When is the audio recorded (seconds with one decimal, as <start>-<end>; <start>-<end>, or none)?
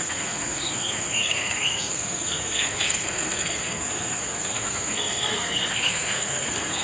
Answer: none